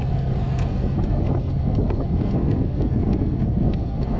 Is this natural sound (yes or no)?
no